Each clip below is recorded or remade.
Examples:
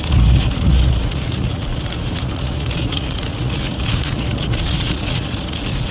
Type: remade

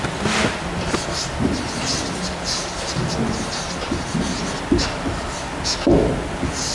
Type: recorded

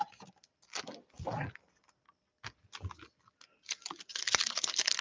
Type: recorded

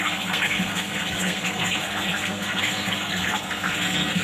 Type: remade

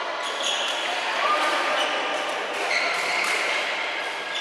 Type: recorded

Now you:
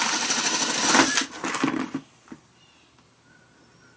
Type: recorded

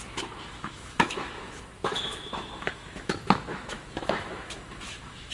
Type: remade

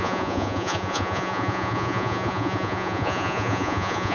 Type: remade